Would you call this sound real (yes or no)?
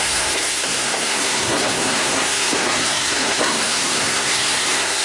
no